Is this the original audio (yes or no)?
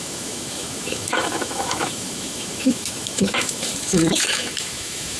no